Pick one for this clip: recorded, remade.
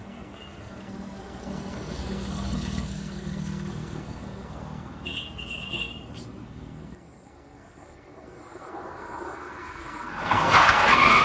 remade